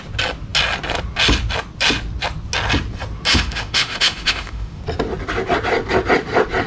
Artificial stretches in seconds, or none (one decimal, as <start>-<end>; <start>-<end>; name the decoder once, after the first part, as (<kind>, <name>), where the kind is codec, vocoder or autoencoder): 3.3-4.8 (autoencoder, DAC-VAE)